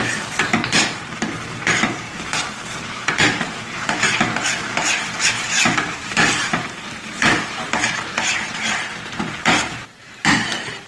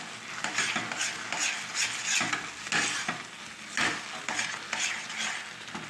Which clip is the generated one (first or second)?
first